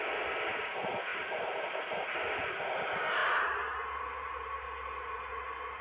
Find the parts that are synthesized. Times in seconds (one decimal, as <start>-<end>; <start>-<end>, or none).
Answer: none